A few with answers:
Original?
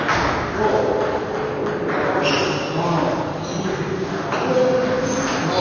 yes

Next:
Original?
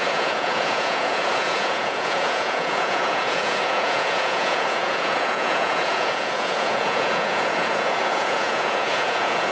no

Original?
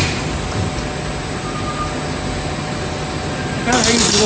yes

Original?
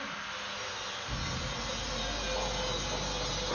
yes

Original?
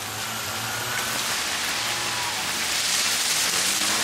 yes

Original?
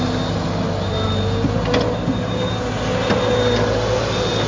yes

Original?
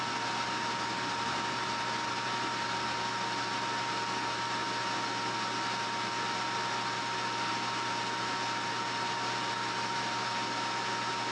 yes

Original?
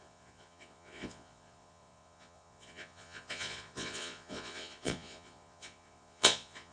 no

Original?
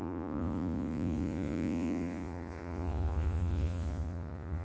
no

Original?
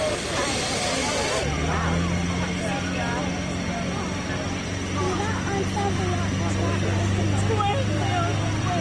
yes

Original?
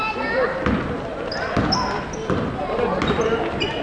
yes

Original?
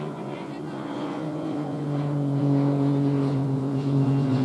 no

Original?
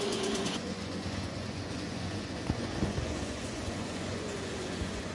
no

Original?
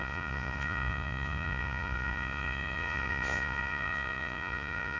no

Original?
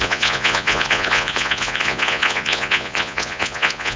no